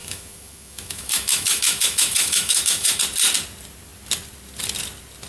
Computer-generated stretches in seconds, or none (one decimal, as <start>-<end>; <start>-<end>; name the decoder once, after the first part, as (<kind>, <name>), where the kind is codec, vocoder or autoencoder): 0.0-3.0 (autoencoder, DAC-VAE)